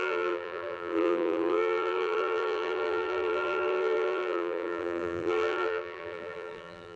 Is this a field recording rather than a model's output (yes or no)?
no